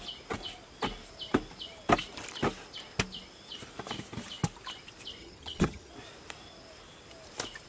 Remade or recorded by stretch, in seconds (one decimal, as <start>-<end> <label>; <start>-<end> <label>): 0.0-5.2 recorded; 5.2-5.9 remade; 5.9-7.7 recorded